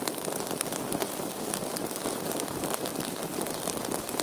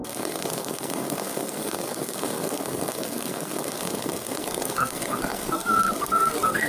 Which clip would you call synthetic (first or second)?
second